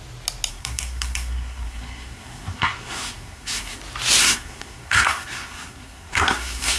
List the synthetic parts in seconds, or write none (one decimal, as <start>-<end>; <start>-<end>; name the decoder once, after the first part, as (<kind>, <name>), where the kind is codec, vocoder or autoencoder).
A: 0.5-3.8 (codec, SNAC); 4.2-6.8